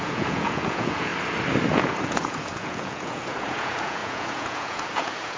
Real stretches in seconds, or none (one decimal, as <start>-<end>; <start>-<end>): 1.1-1.7